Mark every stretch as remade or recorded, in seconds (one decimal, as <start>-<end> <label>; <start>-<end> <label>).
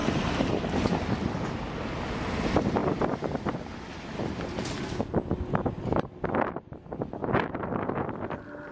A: 0.0-0.5 remade; 0.5-7.2 recorded; 7.2-8.0 remade; 8.0-8.7 recorded